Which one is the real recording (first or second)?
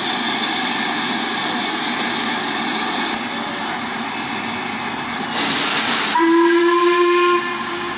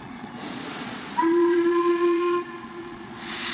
first